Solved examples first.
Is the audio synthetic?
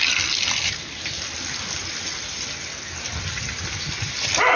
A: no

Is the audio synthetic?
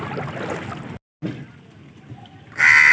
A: no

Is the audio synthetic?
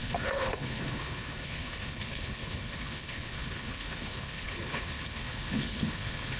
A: yes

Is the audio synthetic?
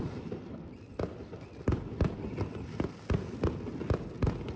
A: no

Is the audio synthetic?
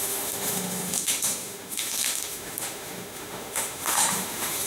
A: yes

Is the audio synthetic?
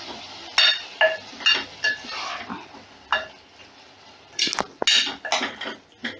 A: no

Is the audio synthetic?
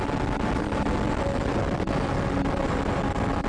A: no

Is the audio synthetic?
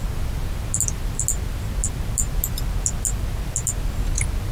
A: no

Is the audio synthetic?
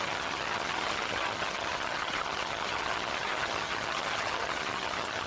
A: yes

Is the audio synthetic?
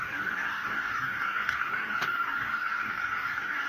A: yes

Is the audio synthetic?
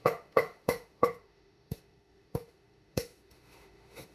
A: yes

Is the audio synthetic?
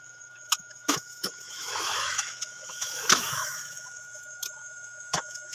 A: yes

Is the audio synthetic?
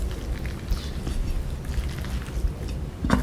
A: no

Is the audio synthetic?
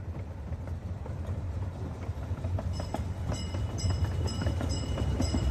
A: yes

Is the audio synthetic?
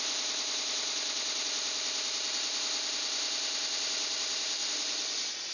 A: no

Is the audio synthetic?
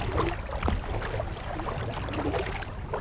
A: no